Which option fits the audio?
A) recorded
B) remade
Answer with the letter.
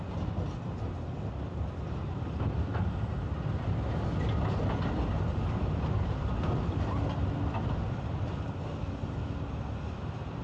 A